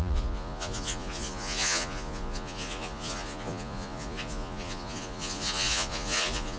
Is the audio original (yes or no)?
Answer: no